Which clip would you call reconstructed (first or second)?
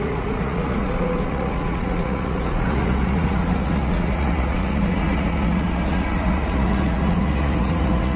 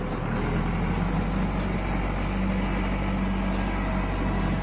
first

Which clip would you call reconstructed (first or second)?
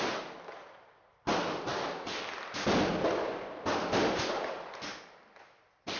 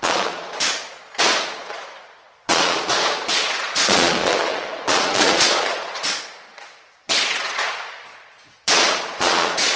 second